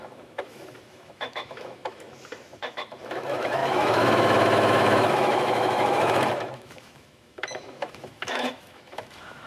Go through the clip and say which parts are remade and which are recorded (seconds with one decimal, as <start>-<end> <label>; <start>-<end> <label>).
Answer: 0.0-9.5 remade